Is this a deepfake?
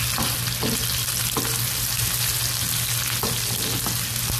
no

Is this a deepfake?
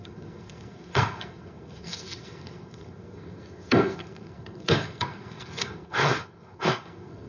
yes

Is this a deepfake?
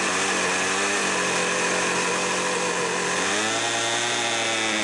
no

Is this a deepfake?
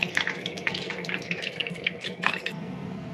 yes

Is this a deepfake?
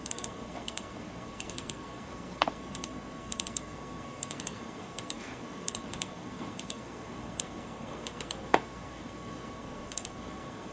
yes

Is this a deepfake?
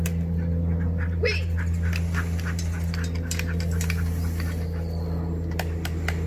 no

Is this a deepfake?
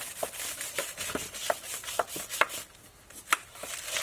no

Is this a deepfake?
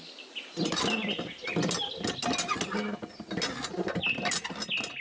no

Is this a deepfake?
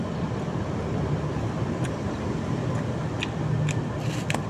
no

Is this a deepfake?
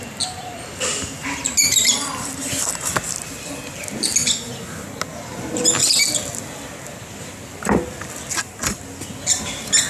no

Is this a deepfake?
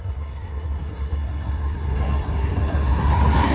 yes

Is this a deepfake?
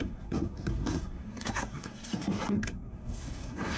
yes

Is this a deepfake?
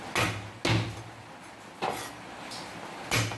no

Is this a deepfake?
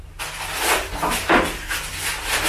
no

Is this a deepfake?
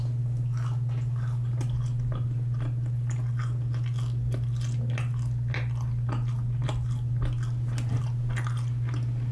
no